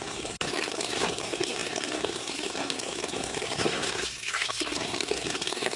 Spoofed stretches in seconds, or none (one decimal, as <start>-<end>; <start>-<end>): 0.0-5.8